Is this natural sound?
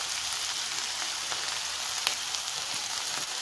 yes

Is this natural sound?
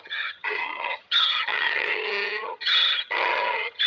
no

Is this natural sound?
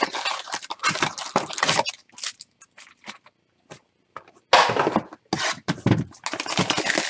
yes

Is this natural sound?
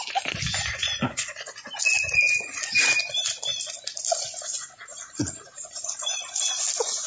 yes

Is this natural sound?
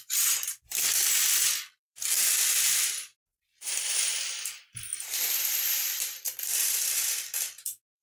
no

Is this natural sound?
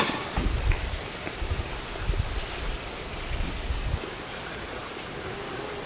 yes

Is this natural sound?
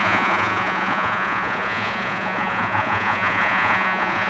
no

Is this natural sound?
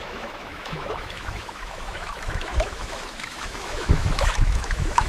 no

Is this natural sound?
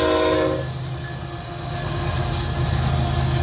yes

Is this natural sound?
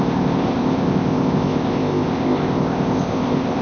no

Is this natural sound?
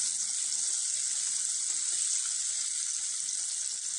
yes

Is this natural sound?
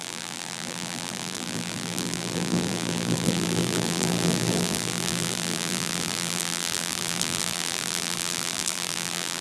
no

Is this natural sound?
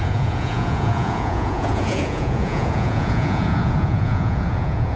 no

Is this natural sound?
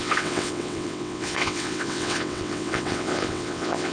no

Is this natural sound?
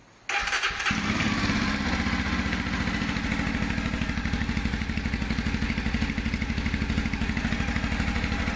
yes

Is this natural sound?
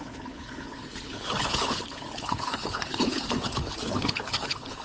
no